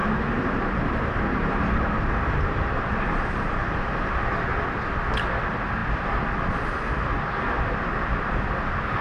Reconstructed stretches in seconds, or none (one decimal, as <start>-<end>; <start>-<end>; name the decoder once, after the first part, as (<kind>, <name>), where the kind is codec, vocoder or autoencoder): 0.0-4.2 (vocoder, BigVGAN v2)